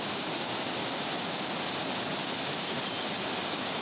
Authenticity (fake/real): real